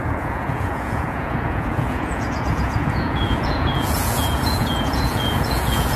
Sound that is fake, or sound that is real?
fake